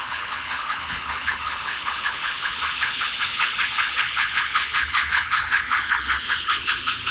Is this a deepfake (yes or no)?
yes